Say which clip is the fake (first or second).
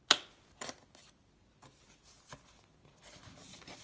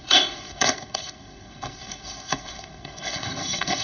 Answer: second